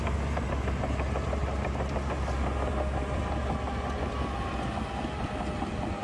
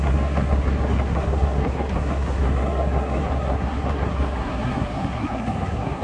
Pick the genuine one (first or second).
first